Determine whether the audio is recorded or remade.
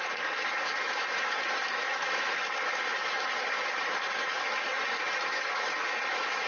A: remade